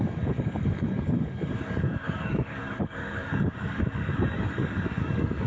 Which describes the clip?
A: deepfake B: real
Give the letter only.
A